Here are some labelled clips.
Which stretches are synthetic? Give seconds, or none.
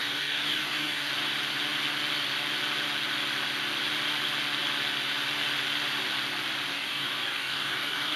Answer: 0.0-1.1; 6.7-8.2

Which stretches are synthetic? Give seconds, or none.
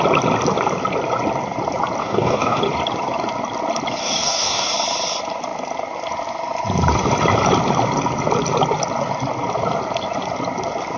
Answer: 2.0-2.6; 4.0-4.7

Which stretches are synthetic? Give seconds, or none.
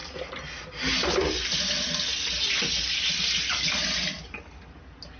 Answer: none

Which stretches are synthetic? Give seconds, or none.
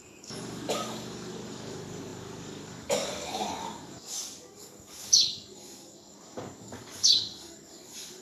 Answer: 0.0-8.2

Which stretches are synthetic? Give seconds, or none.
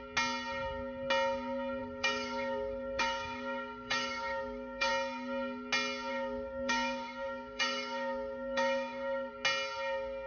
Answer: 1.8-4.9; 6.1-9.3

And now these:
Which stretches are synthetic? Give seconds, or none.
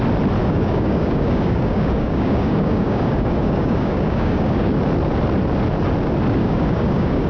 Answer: 0.4-4.8; 6.4-7.3